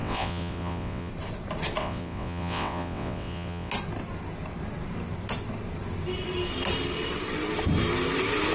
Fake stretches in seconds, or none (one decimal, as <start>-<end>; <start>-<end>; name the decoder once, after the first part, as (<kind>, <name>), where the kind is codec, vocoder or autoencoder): 0.0-1.1 (vocoder, WaveNeXt); 1.8-3.7